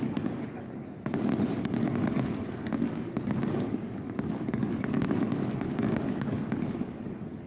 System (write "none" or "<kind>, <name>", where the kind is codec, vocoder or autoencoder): codec, DAC